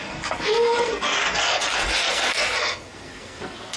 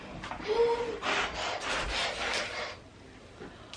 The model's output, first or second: first